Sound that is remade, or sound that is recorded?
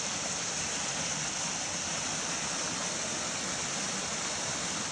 recorded